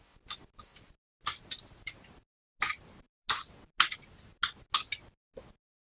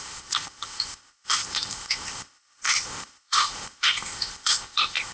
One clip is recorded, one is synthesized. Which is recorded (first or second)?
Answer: first